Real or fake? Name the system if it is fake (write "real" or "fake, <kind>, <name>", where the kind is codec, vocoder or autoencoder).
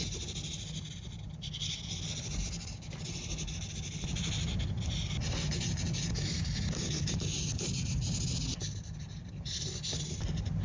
real